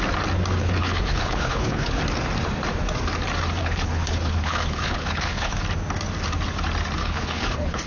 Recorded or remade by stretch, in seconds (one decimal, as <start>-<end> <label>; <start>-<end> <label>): 0.0-0.6 recorded; 0.6-2.0 remade; 2.0-3.6 recorded; 3.6-5.6 remade; 5.6-7.0 recorded; 7.0-7.9 remade